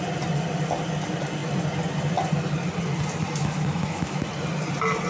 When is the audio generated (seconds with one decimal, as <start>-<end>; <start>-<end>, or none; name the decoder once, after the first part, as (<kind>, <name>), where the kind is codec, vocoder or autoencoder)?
3.4-4.3 (autoencoder, DAC-VAE)